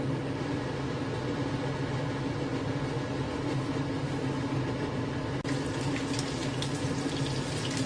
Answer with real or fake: real